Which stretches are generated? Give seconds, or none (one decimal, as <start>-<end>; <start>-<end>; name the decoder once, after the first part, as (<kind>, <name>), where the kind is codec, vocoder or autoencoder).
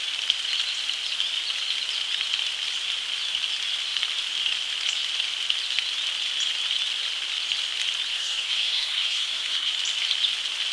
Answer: 8.1-9.7 (codec, SNAC)